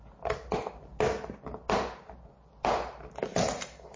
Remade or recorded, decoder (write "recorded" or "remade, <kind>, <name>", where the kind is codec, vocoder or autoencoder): recorded